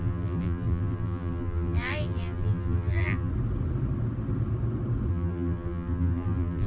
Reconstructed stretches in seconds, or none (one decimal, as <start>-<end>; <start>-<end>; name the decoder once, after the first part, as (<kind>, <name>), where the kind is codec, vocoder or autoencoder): 0.0-3.3 (vocoder, BigVGAN v2); 5.1-6.7